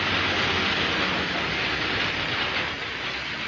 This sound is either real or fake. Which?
real